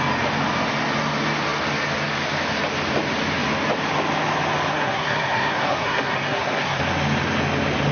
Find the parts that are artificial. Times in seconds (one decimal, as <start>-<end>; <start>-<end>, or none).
4.7-6.8